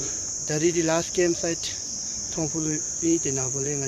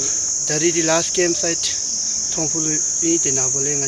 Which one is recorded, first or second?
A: second